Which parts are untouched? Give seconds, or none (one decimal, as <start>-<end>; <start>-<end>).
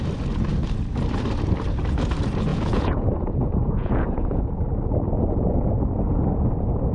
0.0-2.5; 4.4-6.9